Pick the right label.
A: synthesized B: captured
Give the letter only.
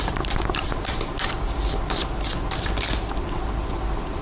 B